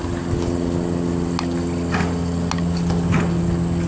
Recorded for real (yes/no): yes